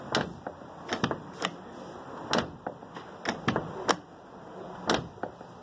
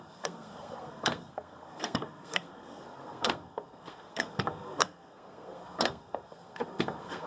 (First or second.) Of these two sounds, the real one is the first